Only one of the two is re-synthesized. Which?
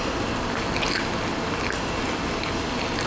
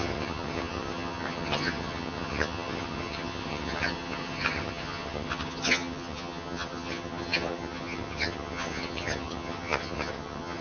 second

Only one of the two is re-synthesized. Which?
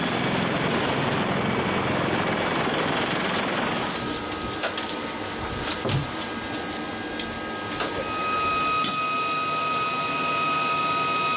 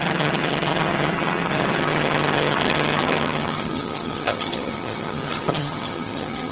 second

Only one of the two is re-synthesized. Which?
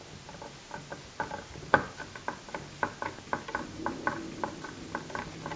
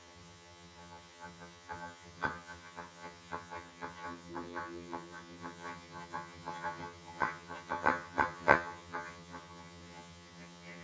second